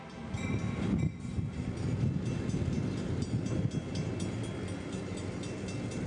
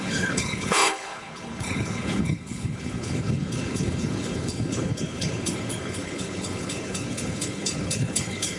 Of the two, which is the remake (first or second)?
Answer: second